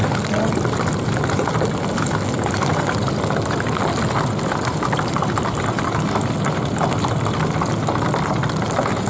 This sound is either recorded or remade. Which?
recorded